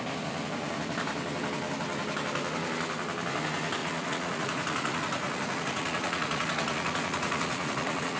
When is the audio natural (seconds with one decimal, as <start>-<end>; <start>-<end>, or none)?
0.0-3.8